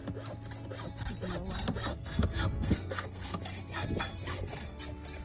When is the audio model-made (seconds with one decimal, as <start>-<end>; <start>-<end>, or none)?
1.9-3.4; 4.3-4.8